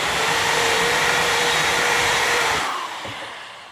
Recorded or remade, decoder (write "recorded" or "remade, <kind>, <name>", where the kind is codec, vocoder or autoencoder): remade, vocoder, BigVGAN v2